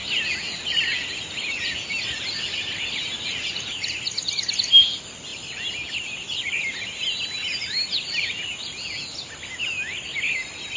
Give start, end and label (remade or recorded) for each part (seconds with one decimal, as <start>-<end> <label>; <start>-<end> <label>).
0.0-10.8 recorded